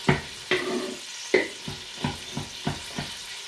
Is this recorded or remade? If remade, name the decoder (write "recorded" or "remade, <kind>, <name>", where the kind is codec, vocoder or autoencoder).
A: recorded